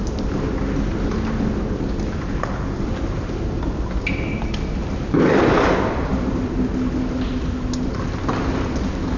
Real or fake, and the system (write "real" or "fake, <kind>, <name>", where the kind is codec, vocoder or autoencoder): real